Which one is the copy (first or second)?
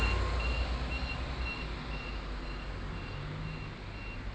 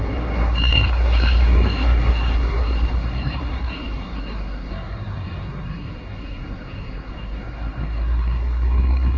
second